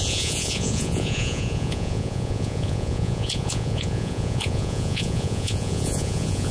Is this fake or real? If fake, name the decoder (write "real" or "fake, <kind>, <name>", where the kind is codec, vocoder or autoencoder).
fake, vocoder, Vocos